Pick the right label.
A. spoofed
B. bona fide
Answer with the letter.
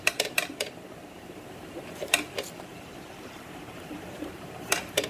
A